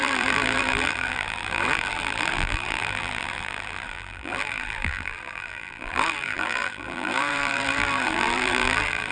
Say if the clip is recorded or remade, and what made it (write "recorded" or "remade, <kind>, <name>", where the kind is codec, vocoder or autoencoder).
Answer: remade, vocoder, BigVGAN v2